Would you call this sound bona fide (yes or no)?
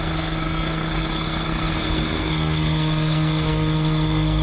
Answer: no